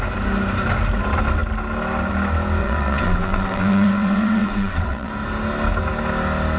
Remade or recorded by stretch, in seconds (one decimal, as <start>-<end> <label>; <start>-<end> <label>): 0.0-2.6 recorded; 2.6-5.1 remade; 5.1-6.6 recorded